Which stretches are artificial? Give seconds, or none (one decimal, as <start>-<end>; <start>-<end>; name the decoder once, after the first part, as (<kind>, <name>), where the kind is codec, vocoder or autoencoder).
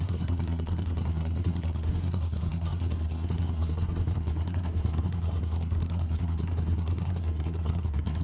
0.0-8.2 (codec, SNAC)